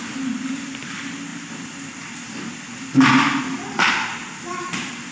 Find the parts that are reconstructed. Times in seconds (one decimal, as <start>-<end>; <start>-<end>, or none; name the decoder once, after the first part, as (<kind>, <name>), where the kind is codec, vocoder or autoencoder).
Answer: none